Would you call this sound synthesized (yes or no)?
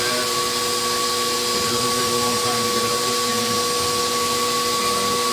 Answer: no